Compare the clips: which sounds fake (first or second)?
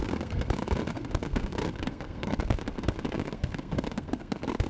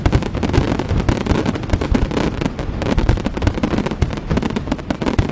first